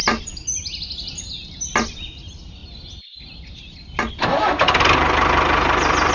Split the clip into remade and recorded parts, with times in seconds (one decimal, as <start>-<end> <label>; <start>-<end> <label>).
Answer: 0.0-2.6 recorded; 2.6-4.4 remade; 4.4-6.1 recorded